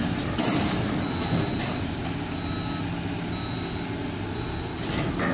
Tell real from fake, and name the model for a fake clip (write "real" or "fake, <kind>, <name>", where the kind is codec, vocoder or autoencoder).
real